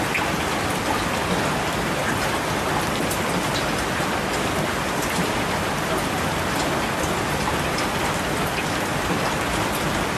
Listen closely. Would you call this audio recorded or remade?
recorded